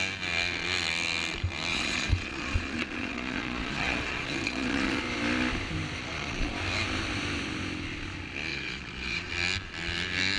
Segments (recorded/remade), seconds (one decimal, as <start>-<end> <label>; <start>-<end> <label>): 0.0-1.7 recorded; 1.7-5.0 remade; 5.0-6.0 recorded; 6.0-6.5 remade; 6.5-8.5 recorded; 8.5-9.3 remade; 9.3-10.4 recorded